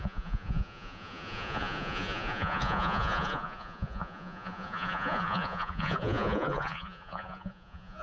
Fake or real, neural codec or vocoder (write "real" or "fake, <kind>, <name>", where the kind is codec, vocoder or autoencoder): fake, vocoder, Vocos